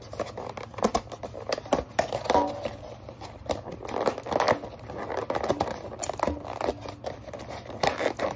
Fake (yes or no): no